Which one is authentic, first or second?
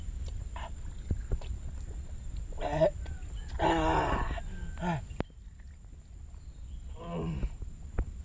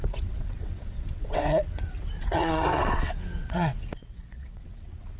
first